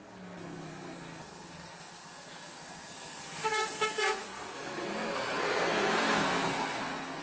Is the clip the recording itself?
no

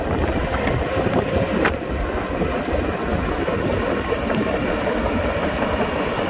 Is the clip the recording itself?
no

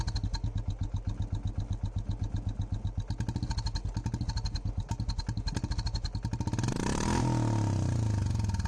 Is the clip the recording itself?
yes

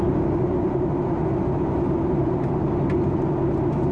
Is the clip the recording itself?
yes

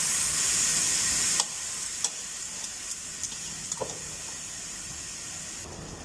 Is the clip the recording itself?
yes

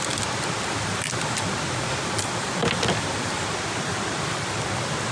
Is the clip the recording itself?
yes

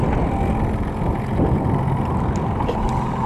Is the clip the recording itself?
yes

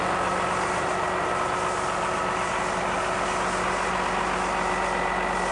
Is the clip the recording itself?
yes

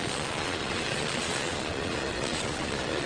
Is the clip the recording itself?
no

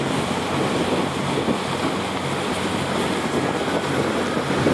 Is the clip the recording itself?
yes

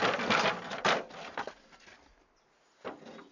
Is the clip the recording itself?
yes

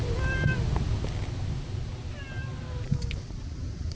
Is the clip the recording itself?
yes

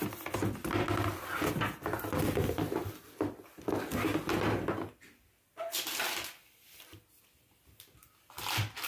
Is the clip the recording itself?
yes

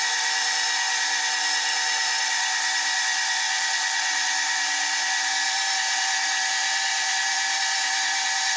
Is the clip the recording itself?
no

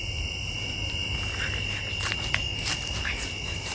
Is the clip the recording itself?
yes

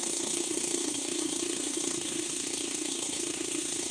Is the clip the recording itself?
no